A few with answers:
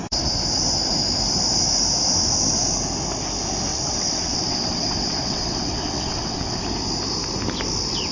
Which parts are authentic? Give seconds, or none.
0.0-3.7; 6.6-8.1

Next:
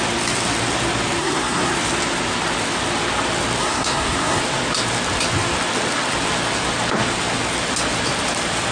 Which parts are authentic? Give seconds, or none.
0.0-1.2; 1.7-3.6; 4.4-8.7